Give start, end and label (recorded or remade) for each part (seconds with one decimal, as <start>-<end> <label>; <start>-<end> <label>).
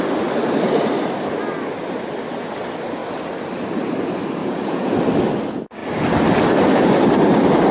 0.0-4.4 recorded; 4.4-4.9 remade; 4.9-7.7 recorded